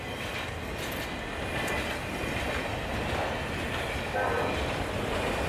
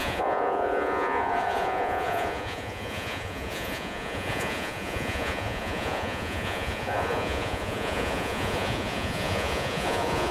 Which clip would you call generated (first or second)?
second